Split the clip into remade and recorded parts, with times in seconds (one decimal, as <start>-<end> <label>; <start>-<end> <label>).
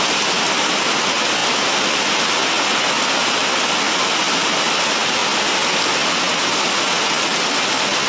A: 0.0-8.1 recorded